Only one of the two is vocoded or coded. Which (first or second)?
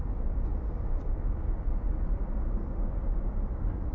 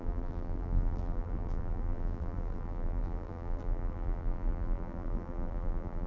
second